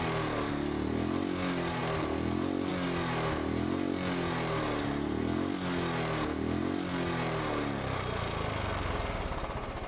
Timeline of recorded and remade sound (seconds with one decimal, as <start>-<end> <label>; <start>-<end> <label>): 0.0-9.9 recorded